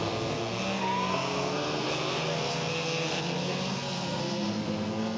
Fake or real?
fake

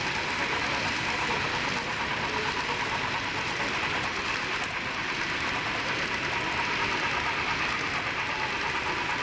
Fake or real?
real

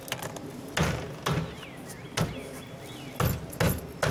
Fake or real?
real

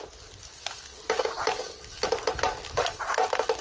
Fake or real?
real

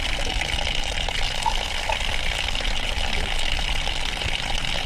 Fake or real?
real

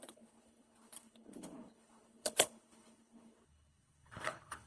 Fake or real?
fake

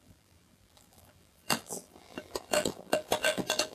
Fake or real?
fake